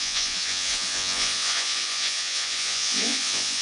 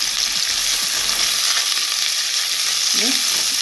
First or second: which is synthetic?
first